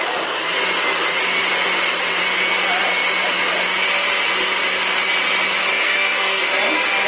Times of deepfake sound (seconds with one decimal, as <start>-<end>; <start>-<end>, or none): 5.7-6.4